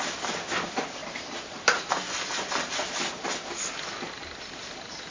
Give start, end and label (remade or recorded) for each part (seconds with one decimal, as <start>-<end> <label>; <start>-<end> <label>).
0.0-1.0 remade; 1.0-4.1 recorded; 4.1-5.1 remade